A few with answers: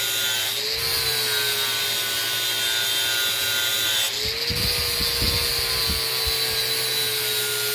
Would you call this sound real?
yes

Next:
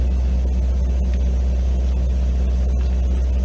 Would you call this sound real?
yes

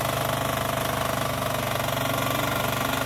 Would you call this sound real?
yes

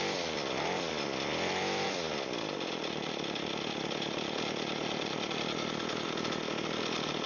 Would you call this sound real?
yes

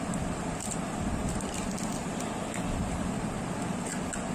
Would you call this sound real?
yes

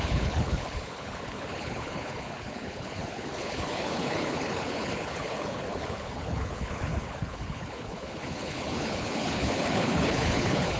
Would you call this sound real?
no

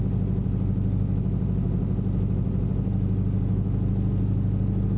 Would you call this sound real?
yes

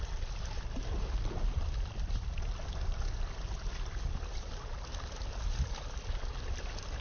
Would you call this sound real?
yes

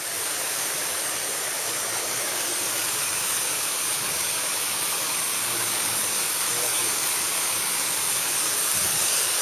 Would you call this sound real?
no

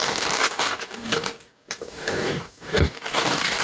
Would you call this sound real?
no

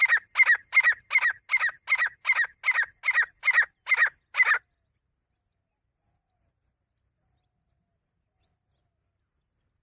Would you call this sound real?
yes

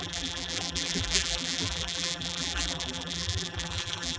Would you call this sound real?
no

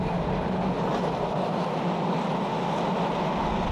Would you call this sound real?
yes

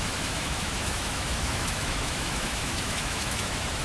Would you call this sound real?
no